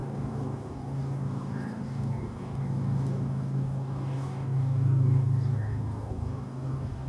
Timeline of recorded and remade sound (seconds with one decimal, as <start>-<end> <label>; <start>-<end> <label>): 0.0-7.1 remade